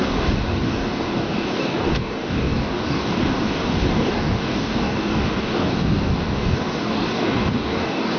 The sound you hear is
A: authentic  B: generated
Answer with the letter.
B